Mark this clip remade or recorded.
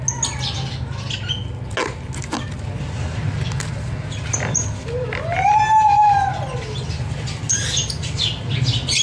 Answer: recorded